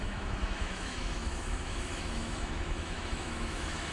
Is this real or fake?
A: fake